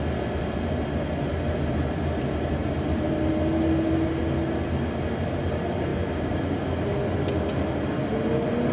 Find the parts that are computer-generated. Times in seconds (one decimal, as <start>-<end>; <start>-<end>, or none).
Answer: 2.6-3.1; 5.9-6.5